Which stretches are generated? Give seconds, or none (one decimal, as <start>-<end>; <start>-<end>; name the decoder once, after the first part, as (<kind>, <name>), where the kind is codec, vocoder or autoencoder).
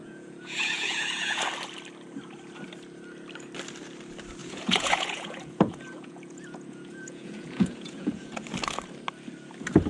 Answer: 0.0-1.4 (vocoder, Vocos); 4.4-8.4